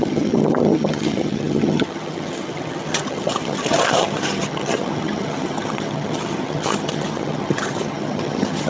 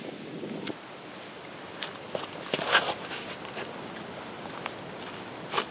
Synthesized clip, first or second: first